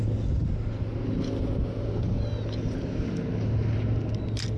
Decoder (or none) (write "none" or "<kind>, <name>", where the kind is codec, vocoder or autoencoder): none